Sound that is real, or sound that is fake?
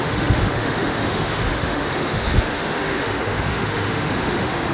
fake